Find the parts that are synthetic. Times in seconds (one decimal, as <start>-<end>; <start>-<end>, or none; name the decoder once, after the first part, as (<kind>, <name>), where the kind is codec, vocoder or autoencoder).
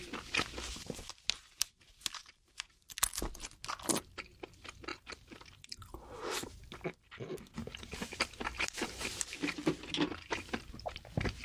2.2-2.9 (vocoder, BigVGAN v2); 4.9-6.6; 7.6-9.1; 9.6-11.4